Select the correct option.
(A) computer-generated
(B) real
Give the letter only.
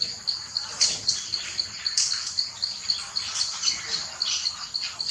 B